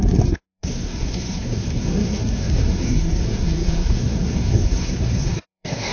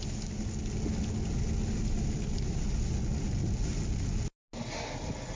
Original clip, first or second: second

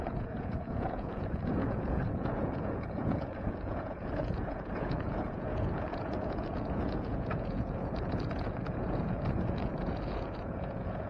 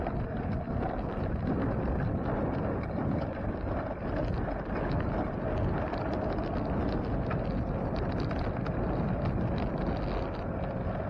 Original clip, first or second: second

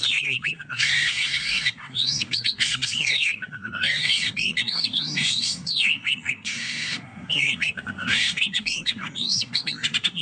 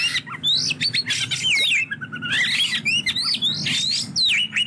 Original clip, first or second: second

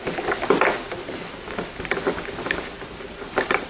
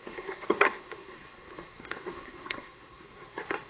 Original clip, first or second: first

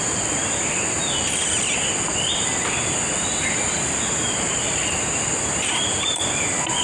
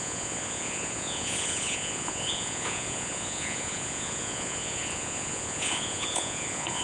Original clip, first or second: first